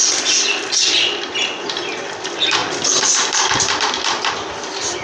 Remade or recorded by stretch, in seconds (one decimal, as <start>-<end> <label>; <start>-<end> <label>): 0.0-5.0 recorded